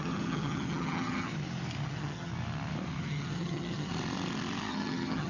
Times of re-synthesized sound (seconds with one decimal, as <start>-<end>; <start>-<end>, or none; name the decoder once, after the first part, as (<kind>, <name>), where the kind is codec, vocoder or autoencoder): 0.0-1.3 (vocoder, HiFi-GAN); 1.9-2.3; 3.0-3.9; 4.7-5.3